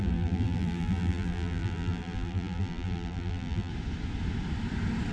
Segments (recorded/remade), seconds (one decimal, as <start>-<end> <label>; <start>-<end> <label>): 0.0-3.7 remade; 3.7-5.1 recorded